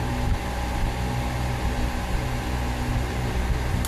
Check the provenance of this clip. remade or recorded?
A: recorded